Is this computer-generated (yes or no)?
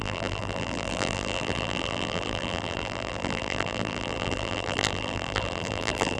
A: yes